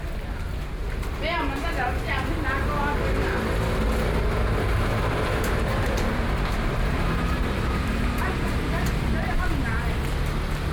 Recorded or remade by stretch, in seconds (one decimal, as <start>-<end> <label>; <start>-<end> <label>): 0.0-0.8 recorded; 0.8-1.9 remade; 1.9-4.9 recorded; 4.9-9.4 remade; 9.4-10.7 recorded